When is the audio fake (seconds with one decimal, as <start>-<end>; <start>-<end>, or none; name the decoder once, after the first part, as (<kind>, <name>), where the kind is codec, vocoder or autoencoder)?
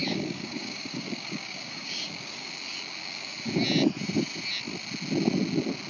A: 0.0-2.5 (codec, DAC); 3.0-3.5